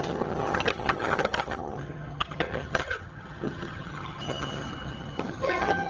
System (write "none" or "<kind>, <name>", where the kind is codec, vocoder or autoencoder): vocoder, HiFi-GAN